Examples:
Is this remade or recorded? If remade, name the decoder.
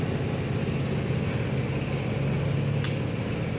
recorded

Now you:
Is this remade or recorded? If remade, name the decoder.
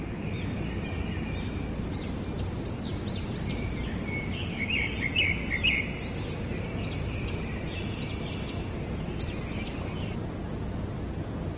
recorded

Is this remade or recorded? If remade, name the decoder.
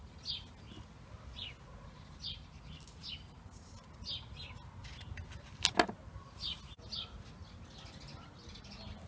recorded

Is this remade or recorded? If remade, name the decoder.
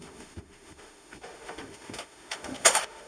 remade, autoencoder, DAC-VAE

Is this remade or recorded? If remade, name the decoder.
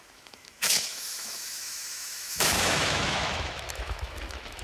remade, autoencoder, DAC-VAE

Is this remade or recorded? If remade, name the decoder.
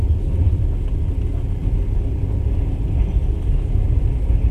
recorded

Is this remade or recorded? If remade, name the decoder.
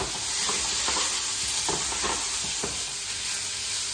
recorded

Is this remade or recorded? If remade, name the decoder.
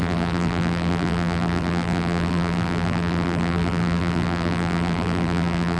remade, vocoder, BigVGAN v2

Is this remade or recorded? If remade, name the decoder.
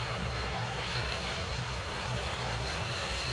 remade, codec, SNAC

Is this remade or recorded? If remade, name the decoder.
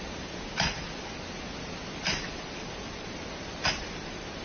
recorded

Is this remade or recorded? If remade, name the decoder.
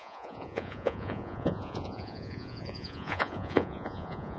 remade, vocoder, Vocos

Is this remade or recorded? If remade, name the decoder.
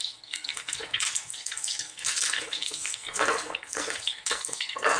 remade, codec, SNAC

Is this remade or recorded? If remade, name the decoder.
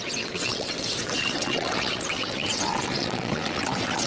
remade, vocoder, WaveNeXt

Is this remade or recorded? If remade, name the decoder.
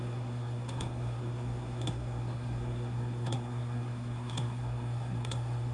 remade, codec, SNAC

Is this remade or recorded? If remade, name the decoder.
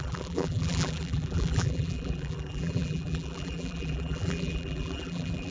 remade, vocoder, BigVGAN v2